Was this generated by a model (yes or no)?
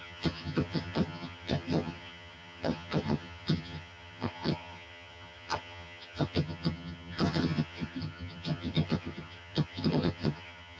yes